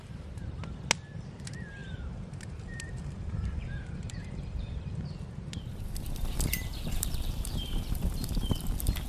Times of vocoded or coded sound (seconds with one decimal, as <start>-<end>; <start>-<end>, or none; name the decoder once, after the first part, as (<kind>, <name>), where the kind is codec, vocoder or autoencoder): 1.8-4.9 (vocoder, BigVGAN v2); 6.7-8.7

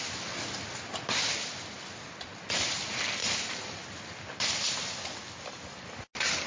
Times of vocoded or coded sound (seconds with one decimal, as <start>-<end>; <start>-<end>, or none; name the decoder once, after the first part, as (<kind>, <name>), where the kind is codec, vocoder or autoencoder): none